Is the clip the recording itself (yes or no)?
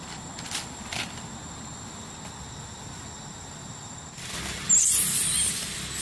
yes